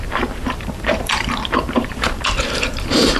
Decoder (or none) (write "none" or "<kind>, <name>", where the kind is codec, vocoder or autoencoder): vocoder, BigVGAN v2